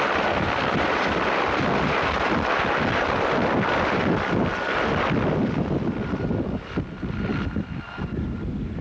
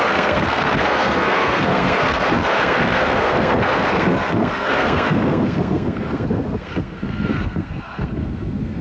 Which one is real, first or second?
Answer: first